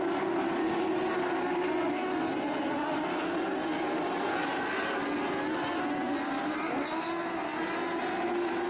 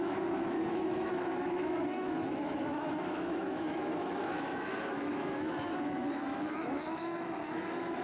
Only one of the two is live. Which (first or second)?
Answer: first